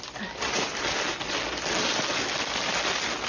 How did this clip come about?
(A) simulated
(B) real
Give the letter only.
B